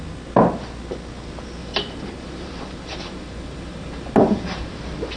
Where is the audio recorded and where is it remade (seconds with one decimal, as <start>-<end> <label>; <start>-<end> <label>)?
0.0-1.6 recorded; 1.6-4.7 remade; 4.7-5.2 recorded